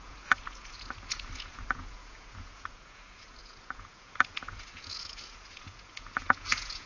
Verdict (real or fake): fake